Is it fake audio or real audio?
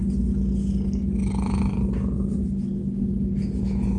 real